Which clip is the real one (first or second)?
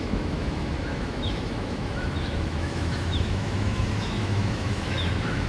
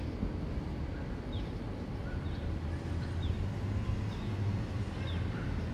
second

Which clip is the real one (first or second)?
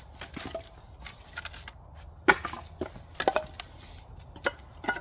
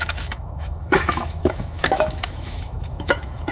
first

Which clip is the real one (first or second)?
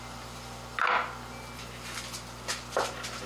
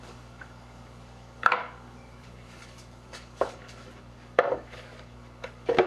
first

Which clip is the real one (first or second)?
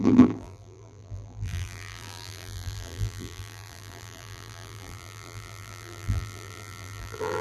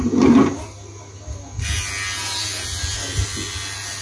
second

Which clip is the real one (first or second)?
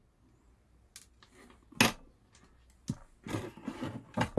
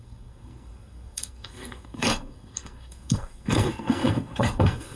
first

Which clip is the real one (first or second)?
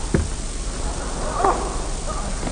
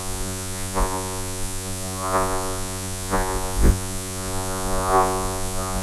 first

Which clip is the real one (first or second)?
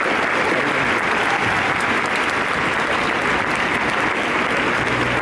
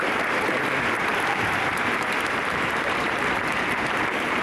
first